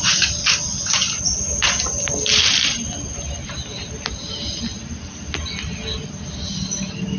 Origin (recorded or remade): recorded